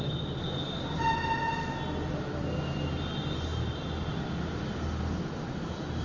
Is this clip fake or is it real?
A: real